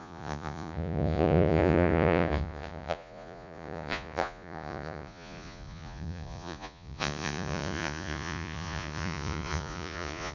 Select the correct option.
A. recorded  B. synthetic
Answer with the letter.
B